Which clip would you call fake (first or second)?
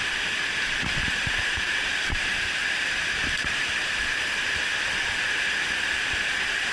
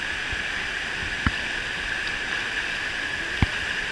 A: first